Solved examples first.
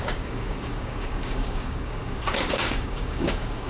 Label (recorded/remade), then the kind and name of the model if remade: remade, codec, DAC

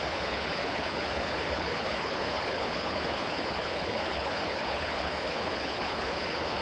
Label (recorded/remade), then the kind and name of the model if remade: remade, codec, HILCodec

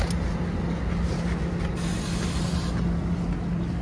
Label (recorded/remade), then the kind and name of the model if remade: recorded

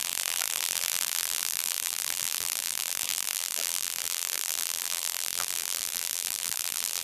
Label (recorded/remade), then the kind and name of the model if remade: remade, vocoder, BigVGAN v2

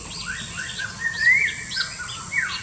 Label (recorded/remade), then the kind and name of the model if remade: recorded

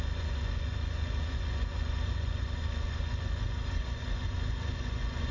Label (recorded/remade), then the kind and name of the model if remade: remade, vocoder, Vocos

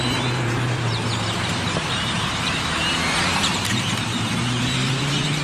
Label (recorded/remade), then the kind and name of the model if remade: remade, vocoder, BigVGAN v2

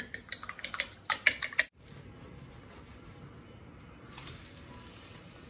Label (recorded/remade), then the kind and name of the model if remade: recorded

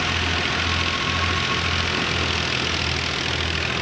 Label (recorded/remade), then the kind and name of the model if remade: recorded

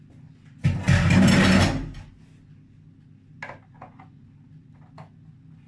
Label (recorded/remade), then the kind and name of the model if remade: recorded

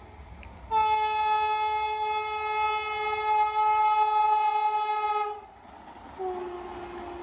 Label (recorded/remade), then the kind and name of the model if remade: recorded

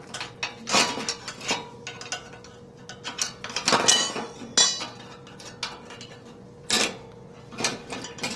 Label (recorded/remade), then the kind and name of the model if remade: recorded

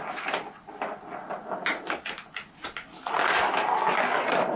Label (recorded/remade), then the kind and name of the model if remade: recorded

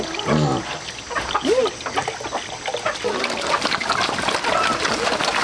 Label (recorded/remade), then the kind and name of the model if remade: recorded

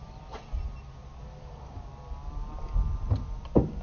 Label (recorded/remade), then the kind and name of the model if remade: recorded